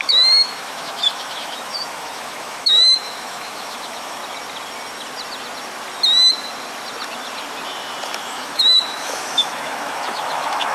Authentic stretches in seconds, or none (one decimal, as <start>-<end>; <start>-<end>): 4.2-8.2